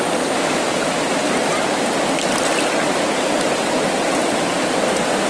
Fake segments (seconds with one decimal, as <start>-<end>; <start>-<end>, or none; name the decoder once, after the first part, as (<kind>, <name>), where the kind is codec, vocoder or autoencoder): none